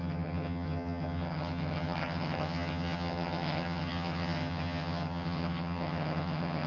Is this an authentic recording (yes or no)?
no